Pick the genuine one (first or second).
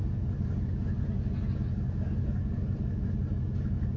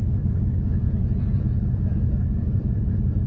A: first